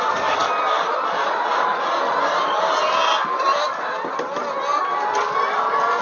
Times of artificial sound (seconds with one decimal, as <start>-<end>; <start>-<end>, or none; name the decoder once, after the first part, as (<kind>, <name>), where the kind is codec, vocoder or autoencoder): none

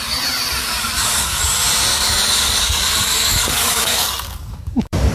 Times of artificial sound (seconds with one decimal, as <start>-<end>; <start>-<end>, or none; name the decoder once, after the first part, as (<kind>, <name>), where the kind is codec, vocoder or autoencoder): 0.6-1.4 (codec, DAC); 1.9-5.1

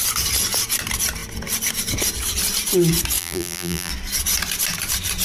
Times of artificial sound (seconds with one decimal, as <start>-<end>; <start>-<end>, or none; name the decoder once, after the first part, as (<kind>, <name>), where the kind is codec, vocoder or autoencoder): 3.2-3.9 (vocoder, BigVGAN v2)

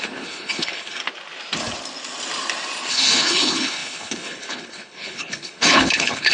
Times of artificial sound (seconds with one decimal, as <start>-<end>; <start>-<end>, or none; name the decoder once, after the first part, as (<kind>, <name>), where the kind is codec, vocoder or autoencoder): 0.0-1.0 (codec, HILCodec); 2.9-6.3

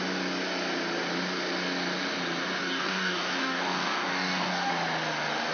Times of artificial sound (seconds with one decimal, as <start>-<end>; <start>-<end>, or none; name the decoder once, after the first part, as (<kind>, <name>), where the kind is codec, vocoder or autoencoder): 2.6-4.7 (codec, DAC)

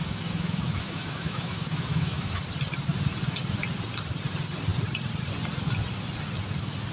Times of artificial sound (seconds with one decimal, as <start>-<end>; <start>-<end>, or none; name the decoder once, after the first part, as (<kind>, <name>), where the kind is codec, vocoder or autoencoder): 0.0-2.4 (autoencoder, DAC-VAE)

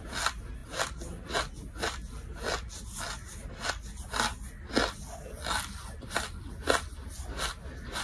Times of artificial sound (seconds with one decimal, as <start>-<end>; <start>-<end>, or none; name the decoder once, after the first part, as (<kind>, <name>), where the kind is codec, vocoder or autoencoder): none

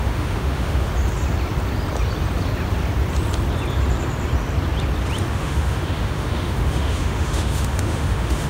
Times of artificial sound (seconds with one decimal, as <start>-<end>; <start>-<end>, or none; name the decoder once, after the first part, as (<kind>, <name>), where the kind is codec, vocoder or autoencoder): 0.0-0.9 (autoencoder, DAC-VAE); 5.3-8.5